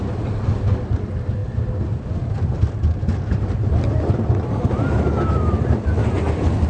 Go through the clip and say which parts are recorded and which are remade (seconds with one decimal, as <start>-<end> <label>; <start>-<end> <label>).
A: 0.0-6.7 recorded